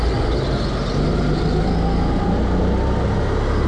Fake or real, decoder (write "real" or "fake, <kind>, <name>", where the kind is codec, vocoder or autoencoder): real